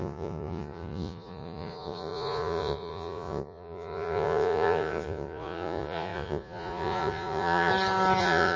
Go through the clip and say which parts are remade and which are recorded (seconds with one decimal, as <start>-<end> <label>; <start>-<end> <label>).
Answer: 0.0-7.7 remade; 7.7-8.2 recorded; 8.2-8.6 remade